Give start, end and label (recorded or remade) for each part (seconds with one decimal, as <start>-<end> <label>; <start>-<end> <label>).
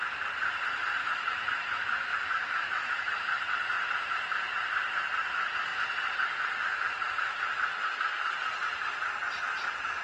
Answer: 0.0-1.0 recorded; 1.0-2.9 remade; 2.9-10.0 recorded